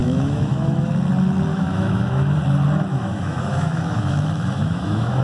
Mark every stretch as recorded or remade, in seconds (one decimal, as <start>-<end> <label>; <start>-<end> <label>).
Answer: 0.0-0.9 remade; 0.9-1.5 recorded; 1.5-2.4 remade; 2.4-2.9 recorded; 2.9-5.2 remade